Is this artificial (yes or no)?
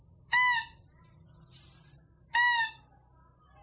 no